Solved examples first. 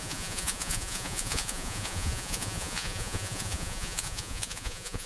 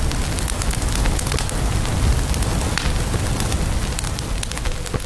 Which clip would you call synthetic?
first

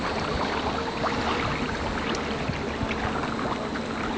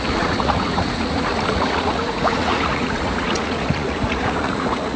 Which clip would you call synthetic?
second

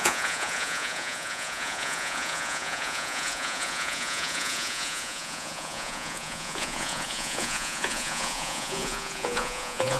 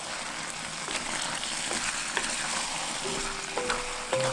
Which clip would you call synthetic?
first